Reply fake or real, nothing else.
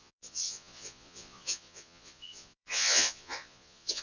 fake